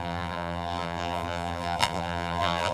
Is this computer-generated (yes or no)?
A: yes